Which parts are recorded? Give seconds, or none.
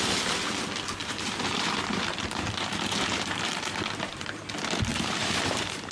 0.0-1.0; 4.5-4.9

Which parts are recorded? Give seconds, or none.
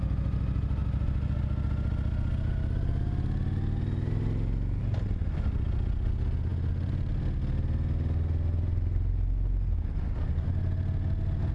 0.0-11.5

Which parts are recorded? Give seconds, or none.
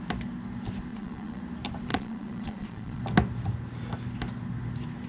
0.0-0.9; 1.4-1.9; 3.0-5.1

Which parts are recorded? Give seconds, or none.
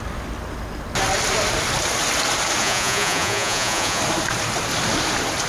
0.0-2.6; 4.0-5.5